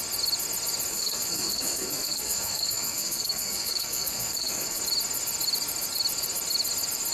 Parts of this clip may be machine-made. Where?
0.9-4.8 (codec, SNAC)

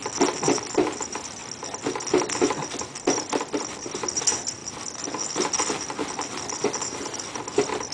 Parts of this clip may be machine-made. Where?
none

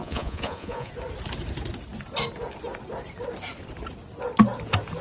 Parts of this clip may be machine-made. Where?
0.0-0.9 (vocoder, Vocos)